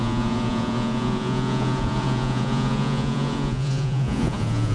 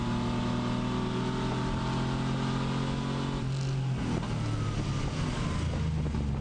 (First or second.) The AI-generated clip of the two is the first